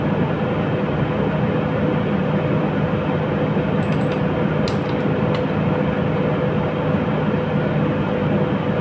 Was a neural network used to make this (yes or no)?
no